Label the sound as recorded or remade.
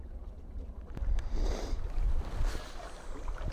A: remade